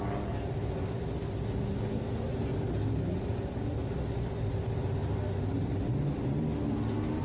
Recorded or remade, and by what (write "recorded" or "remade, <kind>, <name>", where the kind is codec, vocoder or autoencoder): recorded